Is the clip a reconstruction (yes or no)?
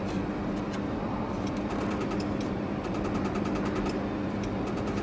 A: yes